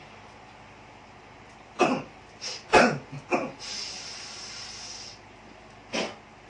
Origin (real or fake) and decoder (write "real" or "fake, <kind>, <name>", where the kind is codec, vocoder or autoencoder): real